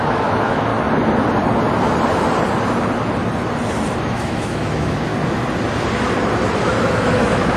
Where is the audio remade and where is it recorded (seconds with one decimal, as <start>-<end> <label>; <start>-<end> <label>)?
0.0-0.7 remade; 0.7-4.0 recorded; 4.0-5.1 remade; 5.1-6.8 recorded; 6.8-7.6 remade